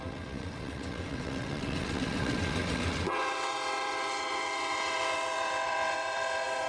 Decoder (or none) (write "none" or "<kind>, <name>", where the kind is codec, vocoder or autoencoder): vocoder, WaveNeXt